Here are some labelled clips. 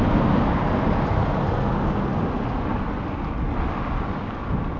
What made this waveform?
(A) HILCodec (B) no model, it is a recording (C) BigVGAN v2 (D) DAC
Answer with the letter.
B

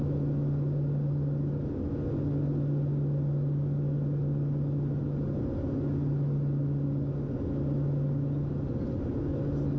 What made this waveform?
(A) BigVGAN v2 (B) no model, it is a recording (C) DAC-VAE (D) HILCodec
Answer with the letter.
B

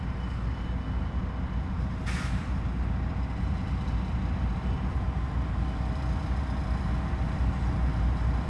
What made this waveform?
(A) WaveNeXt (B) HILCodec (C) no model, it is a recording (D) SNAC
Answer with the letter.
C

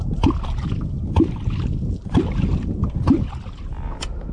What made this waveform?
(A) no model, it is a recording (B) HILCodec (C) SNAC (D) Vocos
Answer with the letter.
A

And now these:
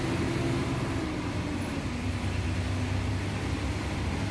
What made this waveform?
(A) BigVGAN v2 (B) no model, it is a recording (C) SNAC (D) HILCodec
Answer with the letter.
B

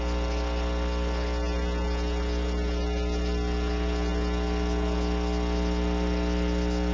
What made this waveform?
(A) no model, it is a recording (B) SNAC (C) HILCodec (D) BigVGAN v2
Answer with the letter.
A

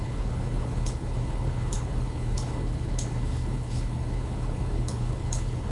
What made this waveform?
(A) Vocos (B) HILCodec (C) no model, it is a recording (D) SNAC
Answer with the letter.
B